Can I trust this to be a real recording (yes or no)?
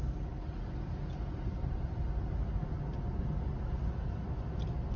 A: yes